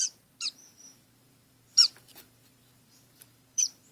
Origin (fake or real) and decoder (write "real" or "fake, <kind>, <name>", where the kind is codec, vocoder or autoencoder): fake, vocoder, BigVGAN v2